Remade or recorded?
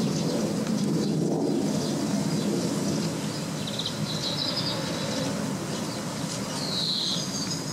recorded